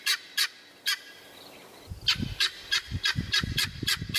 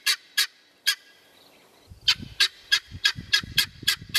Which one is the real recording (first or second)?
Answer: first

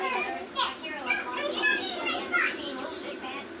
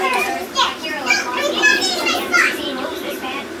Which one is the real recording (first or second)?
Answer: first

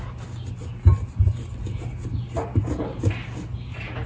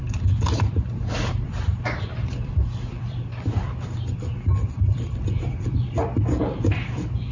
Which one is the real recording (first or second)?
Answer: first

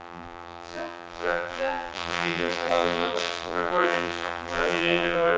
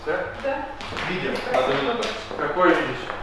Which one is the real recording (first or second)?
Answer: second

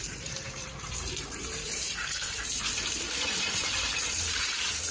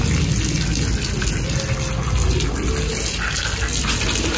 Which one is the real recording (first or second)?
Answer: second